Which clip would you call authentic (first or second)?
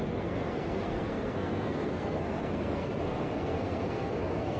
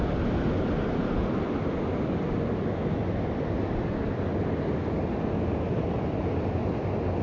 second